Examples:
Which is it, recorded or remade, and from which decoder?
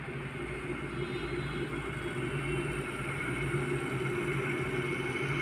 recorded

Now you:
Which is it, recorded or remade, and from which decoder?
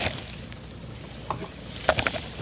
recorded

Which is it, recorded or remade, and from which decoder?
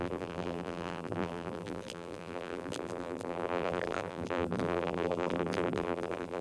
remade, vocoder, BigVGAN v2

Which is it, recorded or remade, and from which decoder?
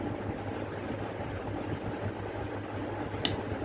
recorded